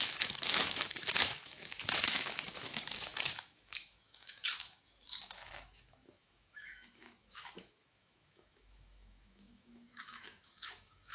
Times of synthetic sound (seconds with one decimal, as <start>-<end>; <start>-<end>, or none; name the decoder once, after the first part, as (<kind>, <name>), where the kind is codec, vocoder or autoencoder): 0.0-11.1 (autoencoder, DAC-VAE)